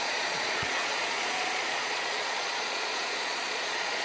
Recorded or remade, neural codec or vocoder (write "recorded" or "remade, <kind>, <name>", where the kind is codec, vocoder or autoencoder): remade, vocoder, Vocos